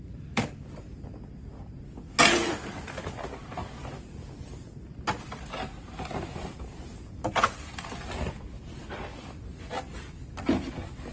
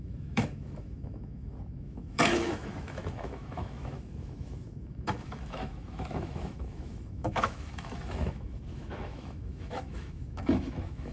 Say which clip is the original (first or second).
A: first